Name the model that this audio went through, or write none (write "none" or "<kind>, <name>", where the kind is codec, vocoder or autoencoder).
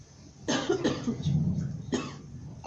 none